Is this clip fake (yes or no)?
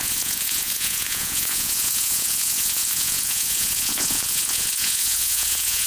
yes